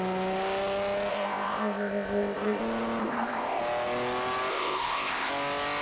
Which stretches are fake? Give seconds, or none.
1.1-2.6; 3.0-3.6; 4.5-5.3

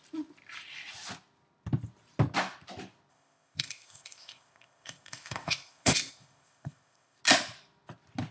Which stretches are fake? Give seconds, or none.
3.1-7.2